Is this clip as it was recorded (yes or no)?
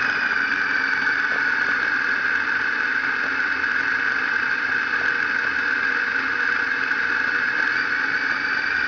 yes